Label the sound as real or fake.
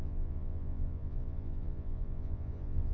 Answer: fake